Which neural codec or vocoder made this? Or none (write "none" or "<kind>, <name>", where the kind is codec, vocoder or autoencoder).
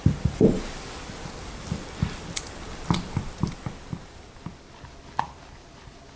none